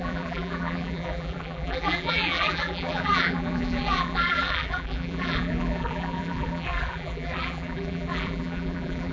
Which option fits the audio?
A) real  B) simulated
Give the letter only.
B